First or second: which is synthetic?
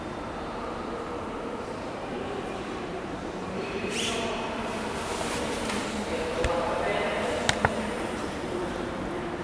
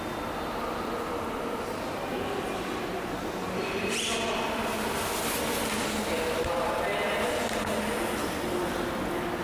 first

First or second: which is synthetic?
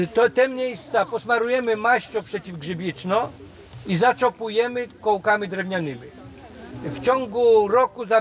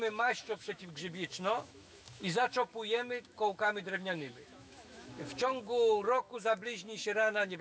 second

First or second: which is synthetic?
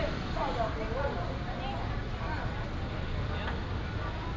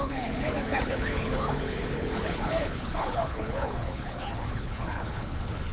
second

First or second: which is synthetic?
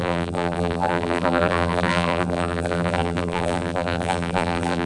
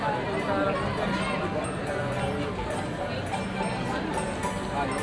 first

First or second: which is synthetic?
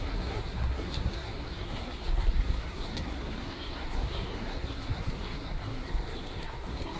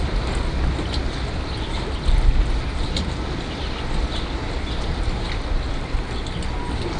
first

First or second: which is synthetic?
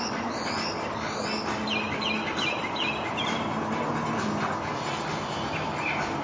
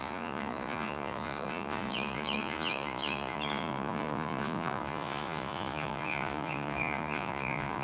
second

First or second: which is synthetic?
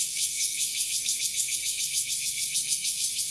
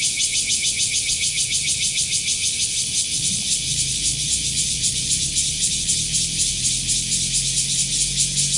first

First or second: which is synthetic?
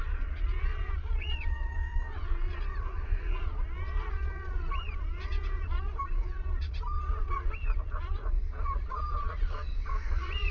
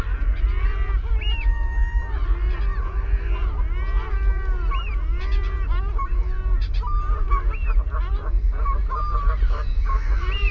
first